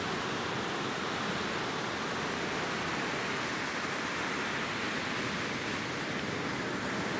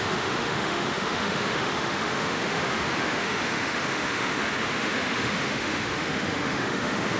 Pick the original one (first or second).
first